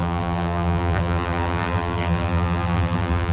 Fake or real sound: fake